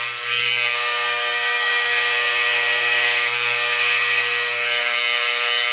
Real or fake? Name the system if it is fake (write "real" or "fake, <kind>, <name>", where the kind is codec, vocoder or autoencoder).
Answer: fake, codec, SNAC